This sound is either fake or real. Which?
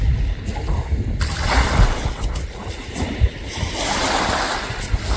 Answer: real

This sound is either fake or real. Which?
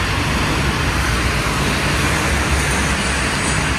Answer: real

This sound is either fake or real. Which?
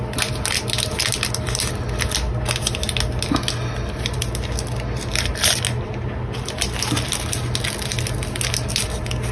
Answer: real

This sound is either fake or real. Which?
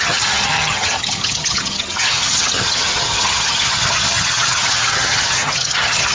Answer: fake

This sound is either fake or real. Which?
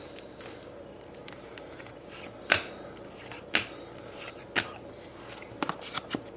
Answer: real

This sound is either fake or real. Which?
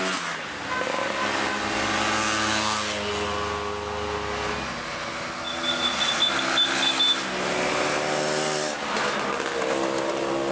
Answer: real